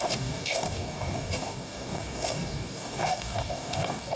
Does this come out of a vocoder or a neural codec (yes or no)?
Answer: yes